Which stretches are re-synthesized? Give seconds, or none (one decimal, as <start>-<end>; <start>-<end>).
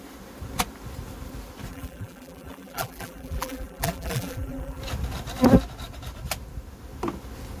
1.7-4.8